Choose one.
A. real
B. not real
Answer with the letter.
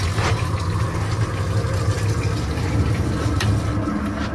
A